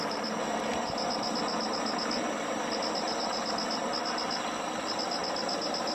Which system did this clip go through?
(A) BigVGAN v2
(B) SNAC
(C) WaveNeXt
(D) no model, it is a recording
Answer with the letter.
D